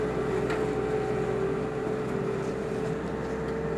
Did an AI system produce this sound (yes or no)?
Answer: no